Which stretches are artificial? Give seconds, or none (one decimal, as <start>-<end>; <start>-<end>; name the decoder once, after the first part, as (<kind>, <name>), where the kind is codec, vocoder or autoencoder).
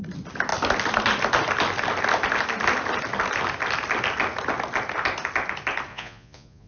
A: 5.9-6.7 (vocoder, Vocos)